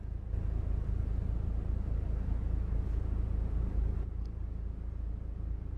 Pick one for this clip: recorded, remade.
recorded